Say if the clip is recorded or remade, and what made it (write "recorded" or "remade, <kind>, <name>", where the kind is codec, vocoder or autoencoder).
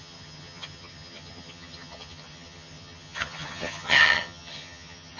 remade, vocoder, HiFi-GAN